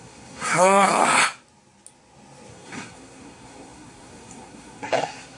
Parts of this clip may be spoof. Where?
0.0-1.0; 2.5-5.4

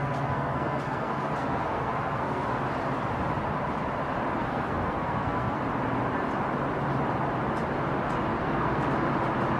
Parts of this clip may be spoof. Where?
0.0-2.5; 4.4-5.6; 8.4-8.9